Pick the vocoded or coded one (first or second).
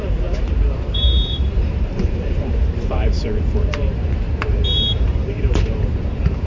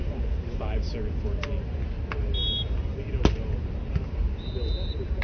first